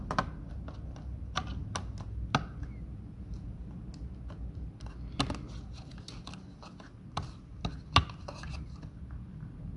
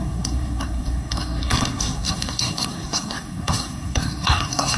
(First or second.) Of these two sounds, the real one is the first